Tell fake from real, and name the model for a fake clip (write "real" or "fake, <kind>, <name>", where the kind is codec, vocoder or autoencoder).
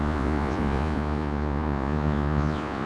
fake, vocoder, Vocos